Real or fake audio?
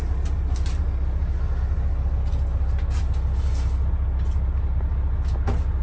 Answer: real